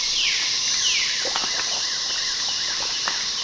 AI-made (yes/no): no